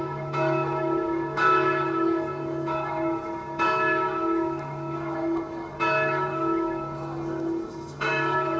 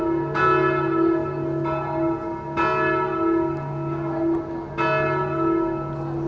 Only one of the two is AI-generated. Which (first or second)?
first